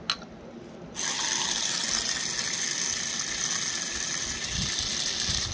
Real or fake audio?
real